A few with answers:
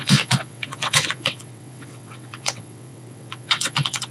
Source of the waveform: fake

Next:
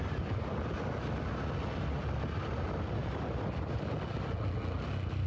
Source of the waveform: real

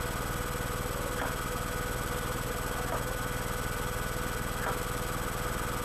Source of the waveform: real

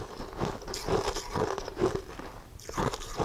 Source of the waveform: real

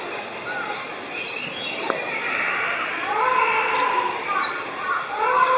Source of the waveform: real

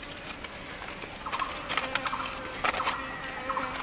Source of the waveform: real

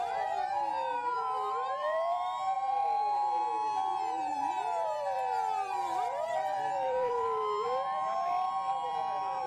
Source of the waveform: fake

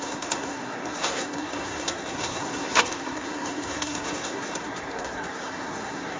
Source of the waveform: fake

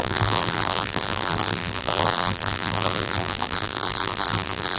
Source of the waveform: fake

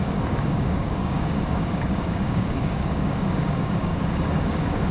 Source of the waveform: fake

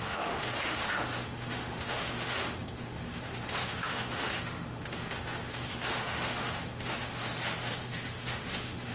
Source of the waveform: fake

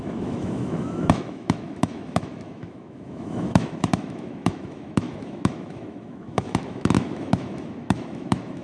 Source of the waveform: fake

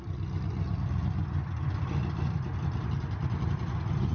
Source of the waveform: real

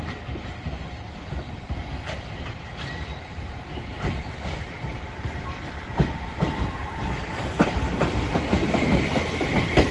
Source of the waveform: fake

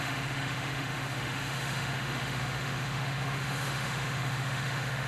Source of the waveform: fake